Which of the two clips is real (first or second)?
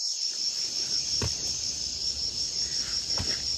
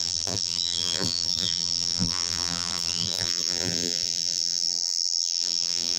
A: first